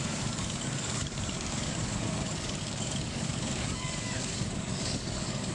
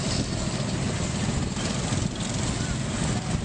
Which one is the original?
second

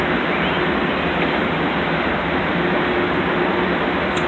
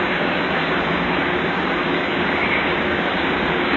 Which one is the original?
first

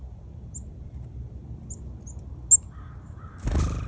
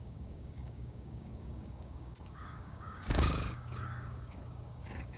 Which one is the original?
first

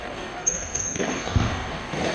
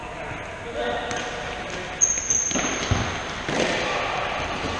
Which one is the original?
second